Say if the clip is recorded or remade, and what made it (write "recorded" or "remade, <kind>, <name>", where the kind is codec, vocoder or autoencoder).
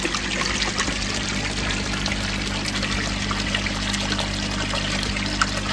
recorded